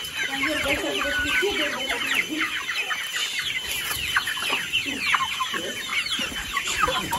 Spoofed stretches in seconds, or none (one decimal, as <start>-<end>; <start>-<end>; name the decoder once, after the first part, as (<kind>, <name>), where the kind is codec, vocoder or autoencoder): 5.9-7.2 (vocoder, BigVGAN v2)